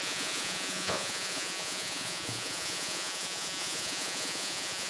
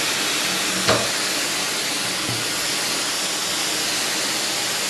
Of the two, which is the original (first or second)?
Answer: second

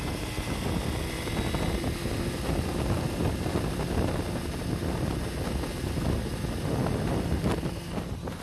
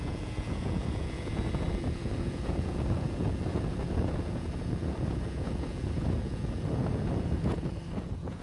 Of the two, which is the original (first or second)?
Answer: first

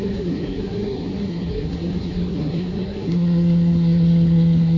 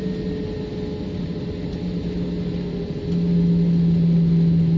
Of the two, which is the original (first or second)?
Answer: second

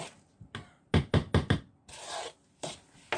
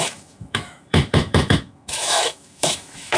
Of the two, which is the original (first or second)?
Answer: first